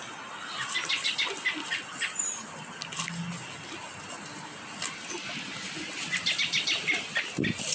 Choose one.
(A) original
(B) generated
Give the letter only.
A